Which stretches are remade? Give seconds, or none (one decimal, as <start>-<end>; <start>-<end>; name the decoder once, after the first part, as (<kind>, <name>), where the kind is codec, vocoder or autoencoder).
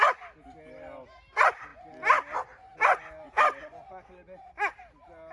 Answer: none